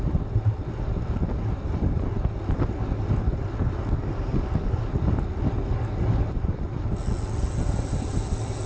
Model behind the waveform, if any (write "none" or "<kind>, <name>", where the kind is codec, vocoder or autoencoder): none